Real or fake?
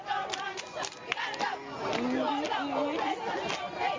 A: real